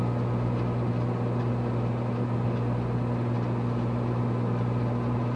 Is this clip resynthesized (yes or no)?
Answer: no